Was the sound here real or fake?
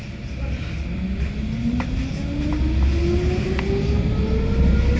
real